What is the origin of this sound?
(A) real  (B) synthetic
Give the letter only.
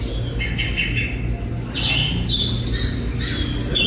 A